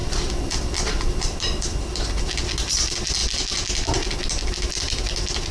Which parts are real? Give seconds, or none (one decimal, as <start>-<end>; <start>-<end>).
1.6-5.5